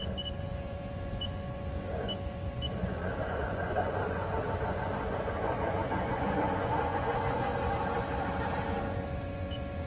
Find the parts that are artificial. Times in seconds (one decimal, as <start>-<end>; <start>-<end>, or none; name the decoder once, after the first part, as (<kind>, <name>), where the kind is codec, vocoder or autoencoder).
0.0-7.5 (vocoder, Vocos); 8.8-9.9